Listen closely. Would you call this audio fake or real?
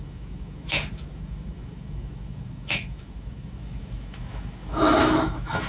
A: fake